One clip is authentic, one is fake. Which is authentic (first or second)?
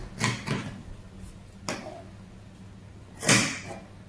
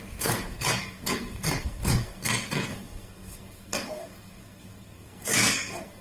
first